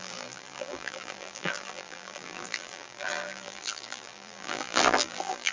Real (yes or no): no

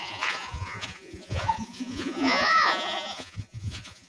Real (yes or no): no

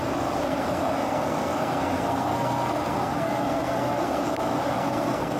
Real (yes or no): no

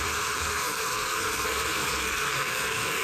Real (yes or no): no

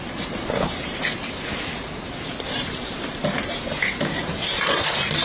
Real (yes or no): no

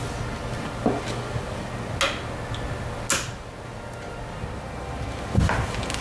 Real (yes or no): yes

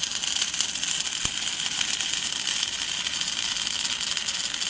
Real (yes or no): yes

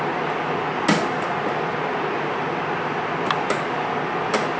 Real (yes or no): yes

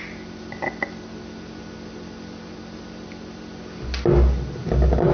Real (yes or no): yes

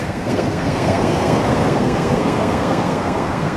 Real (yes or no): no